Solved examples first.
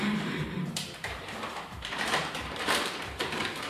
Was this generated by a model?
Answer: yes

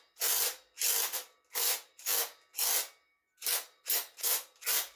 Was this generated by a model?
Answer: no